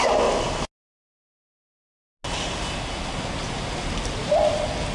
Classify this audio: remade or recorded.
recorded